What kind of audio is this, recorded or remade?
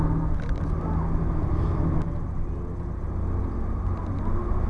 recorded